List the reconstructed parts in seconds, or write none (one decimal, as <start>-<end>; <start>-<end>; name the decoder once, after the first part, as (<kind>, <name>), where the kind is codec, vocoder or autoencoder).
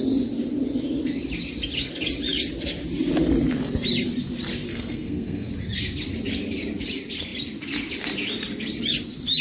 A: 4.7-5.5 (codec, SNAC)